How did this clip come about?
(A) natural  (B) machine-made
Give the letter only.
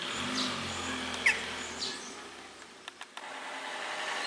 A